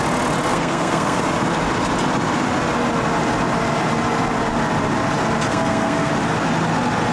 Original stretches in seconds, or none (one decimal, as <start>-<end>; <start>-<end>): 0.0-0.5; 1.2-5.5; 6.1-7.1